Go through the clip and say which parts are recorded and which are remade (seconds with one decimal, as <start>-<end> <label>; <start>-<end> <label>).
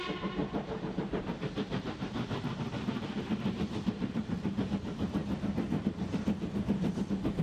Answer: 0.0-0.4 recorded; 0.4-4.7 remade; 4.7-7.4 recorded